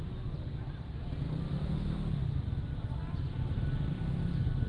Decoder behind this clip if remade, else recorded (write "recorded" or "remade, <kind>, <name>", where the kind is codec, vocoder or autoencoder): recorded